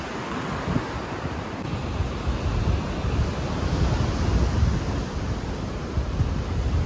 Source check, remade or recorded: recorded